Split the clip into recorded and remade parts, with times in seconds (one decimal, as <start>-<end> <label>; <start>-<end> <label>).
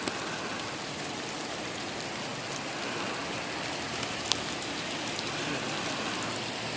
0.0-6.8 recorded